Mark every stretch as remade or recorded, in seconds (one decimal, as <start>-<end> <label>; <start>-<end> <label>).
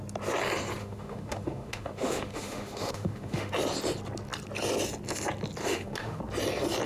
0.0-0.8 recorded; 0.8-3.5 remade; 3.5-5.6 recorded; 5.6-6.2 remade; 6.2-6.9 recorded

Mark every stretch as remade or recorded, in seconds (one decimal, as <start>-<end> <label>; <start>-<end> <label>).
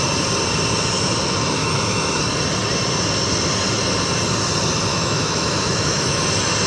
0.0-1.6 recorded; 1.6-2.2 remade; 2.2-4.9 recorded; 4.9-6.2 remade; 6.2-6.7 recorded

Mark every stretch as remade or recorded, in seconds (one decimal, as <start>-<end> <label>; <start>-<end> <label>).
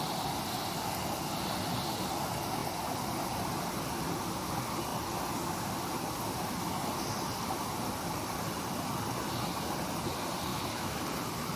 0.0-10.5 recorded; 10.5-11.0 remade; 11.0-11.6 recorded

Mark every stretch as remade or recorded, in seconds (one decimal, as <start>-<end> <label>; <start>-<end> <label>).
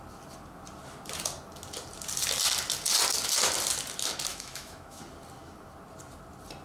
0.0-4.3 recorded; 4.3-5.0 remade; 5.0-6.6 recorded